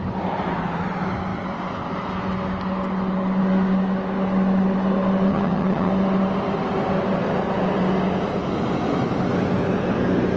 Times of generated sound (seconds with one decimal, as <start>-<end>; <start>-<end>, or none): 5.3-5.9